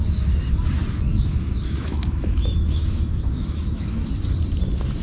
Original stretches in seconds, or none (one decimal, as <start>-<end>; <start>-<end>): 0.0-1.1; 4.1-5.0